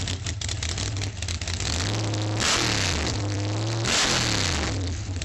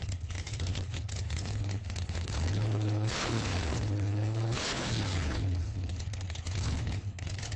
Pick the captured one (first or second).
first